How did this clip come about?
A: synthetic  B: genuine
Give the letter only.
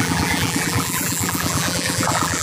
A